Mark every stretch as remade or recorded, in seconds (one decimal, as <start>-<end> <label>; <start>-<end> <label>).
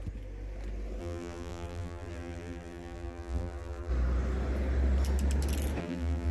0.0-1.0 recorded; 1.0-3.9 remade; 3.9-5.8 recorded; 5.8-6.3 remade